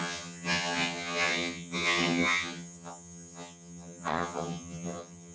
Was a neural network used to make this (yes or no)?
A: yes